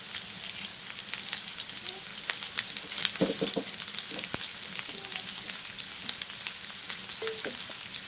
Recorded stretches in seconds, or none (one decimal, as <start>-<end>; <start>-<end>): 0.0-8.1

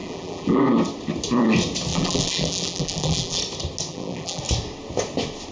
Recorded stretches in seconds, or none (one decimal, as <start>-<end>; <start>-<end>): 0.6-1.9; 3.4-3.9; 4.4-5.5

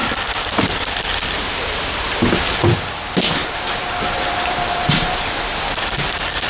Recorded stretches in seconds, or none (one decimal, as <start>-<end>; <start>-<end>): 2.0-3.4

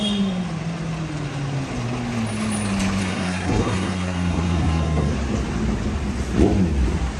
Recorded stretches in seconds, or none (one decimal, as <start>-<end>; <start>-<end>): 0.0-3.0; 5.1-7.2

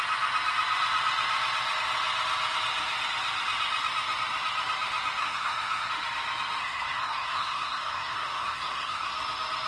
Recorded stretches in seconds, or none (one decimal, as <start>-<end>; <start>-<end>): 0.0-5.2; 5.9-6.6; 9.1-9.7

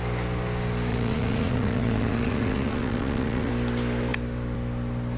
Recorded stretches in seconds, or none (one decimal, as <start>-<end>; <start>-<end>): 0.0-0.9; 3.5-5.2